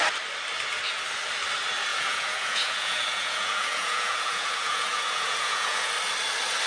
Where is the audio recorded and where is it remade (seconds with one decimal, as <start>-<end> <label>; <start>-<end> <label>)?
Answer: 0.0-1.9 recorded; 1.9-5.9 remade; 5.9-6.7 recorded